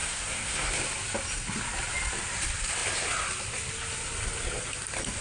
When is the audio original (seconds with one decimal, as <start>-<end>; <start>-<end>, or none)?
0.7-5.2